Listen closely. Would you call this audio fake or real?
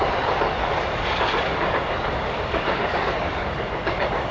fake